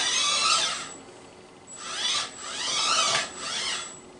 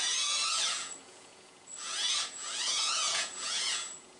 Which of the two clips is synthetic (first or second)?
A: second